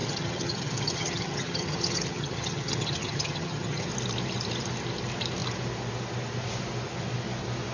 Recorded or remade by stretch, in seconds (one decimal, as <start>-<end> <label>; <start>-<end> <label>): 0.0-3.9 remade; 3.9-7.7 recorded